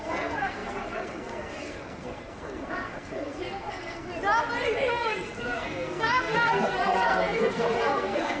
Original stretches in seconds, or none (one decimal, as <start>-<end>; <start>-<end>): 4.1-4.9